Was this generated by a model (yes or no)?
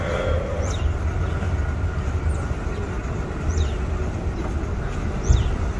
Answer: no